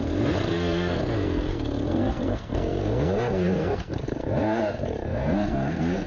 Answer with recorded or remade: remade